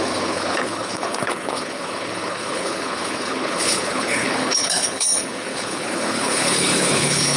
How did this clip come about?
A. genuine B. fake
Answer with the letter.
B